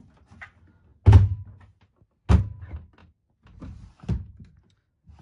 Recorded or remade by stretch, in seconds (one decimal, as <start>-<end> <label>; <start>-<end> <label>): 0.0-5.2 recorded